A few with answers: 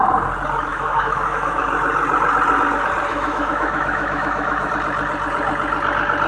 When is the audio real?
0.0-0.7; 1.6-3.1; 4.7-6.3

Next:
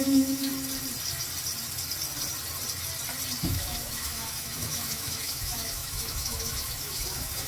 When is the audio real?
0.5-3.4

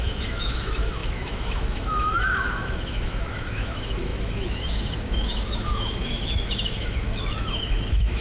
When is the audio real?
none

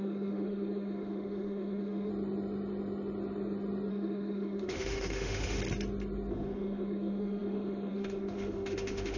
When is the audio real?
2.1-3.9; 5.6-6.3